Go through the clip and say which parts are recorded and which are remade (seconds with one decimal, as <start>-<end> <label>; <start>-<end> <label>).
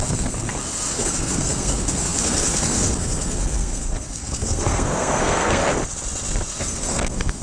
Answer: 0.0-5.6 remade; 5.6-6.5 recorded; 6.5-7.4 remade